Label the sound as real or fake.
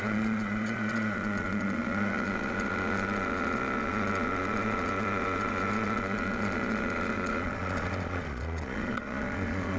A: fake